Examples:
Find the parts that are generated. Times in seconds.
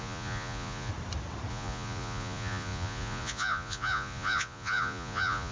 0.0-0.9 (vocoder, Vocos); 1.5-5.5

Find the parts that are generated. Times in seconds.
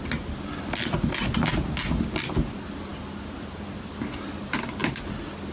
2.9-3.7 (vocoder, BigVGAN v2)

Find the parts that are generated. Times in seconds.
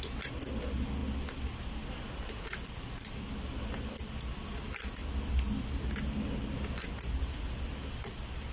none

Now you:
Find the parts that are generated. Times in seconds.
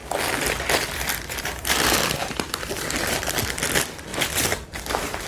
2.2-2.8 (vocoder, BigVGAN v2); 4.1-4.8